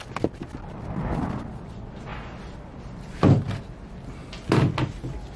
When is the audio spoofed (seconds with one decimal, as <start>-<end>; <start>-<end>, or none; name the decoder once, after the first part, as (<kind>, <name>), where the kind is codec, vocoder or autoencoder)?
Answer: none